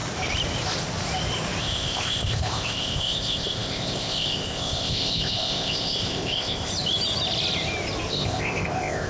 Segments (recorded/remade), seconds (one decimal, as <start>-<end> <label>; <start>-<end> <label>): 0.0-1.6 recorded; 1.6-6.7 remade; 6.7-8.1 recorded; 8.1-9.1 remade